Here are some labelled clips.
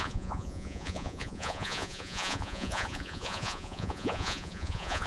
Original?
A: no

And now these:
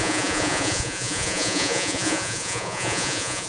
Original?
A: no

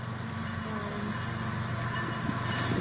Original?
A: yes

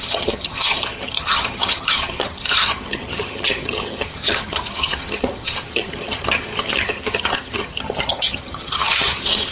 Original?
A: no